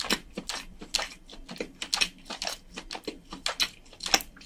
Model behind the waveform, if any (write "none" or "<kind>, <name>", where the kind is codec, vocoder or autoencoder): none